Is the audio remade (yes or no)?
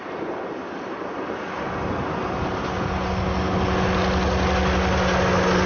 no